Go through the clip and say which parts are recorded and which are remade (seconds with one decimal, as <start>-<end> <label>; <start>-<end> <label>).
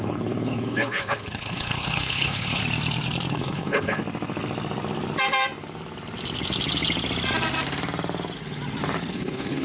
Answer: 0.0-2.6 remade; 2.6-3.3 recorded; 3.3-4.0 remade; 4.0-9.1 recorded; 9.1-9.6 remade